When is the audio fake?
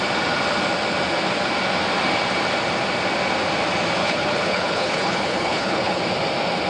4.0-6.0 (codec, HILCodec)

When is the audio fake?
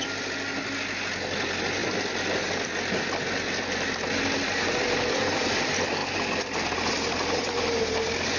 none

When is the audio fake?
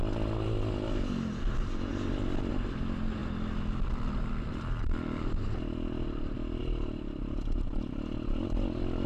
1.9-2.5 (vocoder, BigVGAN v2)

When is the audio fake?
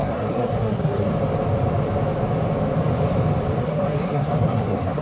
0.0-1.1 (codec, SNAC); 3.6-5.0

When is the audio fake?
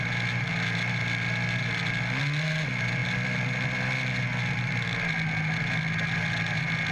none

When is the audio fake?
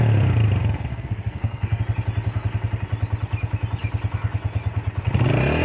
0.9-1.8 (codec, SNAC)